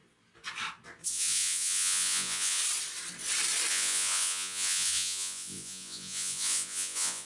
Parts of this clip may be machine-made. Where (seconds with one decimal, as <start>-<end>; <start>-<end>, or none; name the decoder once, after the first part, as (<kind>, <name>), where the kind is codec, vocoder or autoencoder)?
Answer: 1.1-2.6 (vocoder, Vocos); 3.7-7.3